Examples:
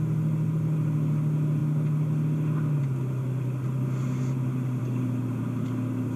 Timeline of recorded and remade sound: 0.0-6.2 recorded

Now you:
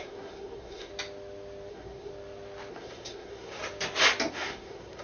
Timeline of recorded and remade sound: 0.0-0.9 remade; 0.9-1.7 recorded; 1.7-2.1 remade; 2.1-2.7 recorded; 2.7-3.6 remade; 3.6-4.3 recorded; 4.3-5.0 remade

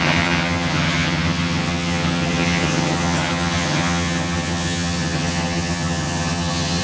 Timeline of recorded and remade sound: 0.0-6.8 remade

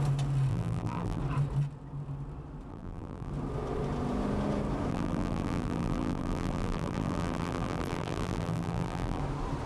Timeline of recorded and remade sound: 0.0-0.5 recorded; 0.5-1.2 remade; 1.2-2.7 recorded; 2.7-3.3 remade; 3.3-4.9 recorded; 4.9-9.2 remade; 9.2-9.7 recorded

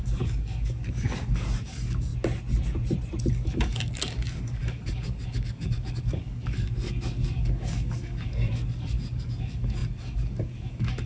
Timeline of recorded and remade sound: 0.0-2.1 remade; 2.1-3.3 recorded; 3.3-11.1 remade

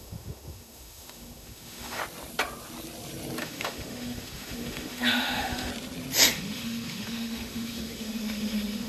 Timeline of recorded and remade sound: 0.0-2.0 remade; 2.0-3.4 recorded; 3.4-5.7 remade; 5.7-6.3 recorded; 6.3-8.9 remade

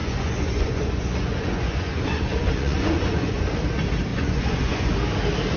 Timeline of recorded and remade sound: 0.0-3.4 remade; 3.4-4.1 recorded; 4.1-4.9 remade; 4.9-5.6 recorded